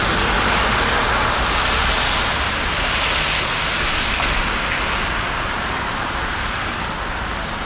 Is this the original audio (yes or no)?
yes